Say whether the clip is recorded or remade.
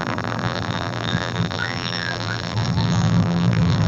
remade